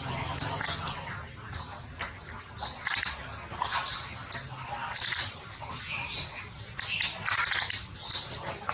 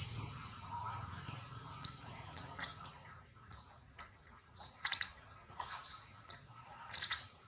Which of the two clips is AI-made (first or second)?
second